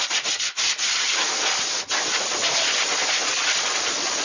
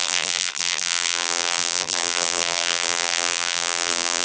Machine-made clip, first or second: second